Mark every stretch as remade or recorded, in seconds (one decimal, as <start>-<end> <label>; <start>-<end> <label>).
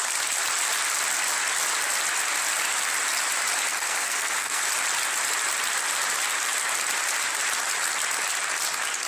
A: 0.0-3.7 recorded; 3.7-4.7 remade; 4.7-9.1 recorded